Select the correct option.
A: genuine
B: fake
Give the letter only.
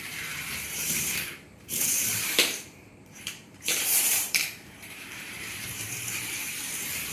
B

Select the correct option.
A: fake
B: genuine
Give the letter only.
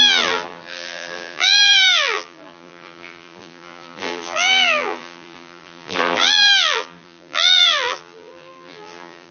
A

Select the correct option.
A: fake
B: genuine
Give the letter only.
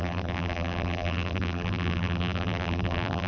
A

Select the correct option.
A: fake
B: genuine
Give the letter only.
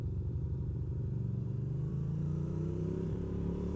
A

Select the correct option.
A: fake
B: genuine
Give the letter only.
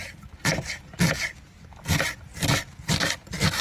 B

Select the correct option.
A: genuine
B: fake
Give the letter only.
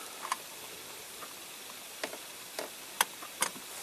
A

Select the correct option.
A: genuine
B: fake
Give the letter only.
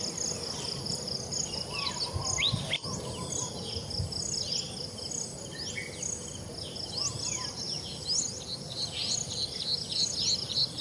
A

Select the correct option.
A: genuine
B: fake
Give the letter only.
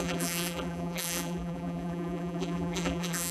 B